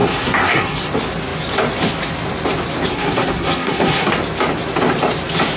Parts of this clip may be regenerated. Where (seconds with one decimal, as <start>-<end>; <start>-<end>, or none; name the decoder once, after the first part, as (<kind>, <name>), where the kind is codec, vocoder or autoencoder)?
0.0-0.9 (codec, SNAC); 2.9-4.1